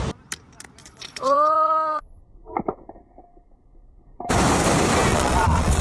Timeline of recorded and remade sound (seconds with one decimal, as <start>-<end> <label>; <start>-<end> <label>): 0.0-0.8 recorded; 0.8-2.2 remade; 2.2-5.1 recorded; 5.1-5.8 remade

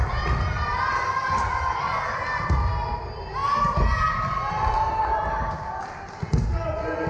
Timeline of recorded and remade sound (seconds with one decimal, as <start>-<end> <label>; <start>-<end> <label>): 0.0-7.1 recorded